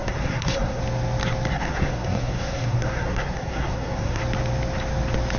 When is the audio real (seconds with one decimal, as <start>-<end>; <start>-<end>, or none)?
0.8-1.5; 4.2-5.4